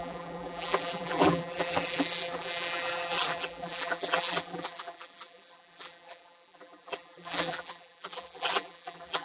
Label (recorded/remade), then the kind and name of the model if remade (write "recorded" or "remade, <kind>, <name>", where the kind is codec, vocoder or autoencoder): remade, vocoder, BigVGAN v2